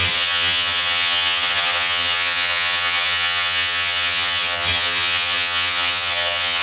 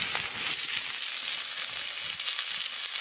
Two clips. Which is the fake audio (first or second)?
first